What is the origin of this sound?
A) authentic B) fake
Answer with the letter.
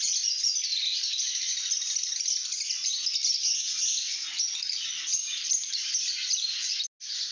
A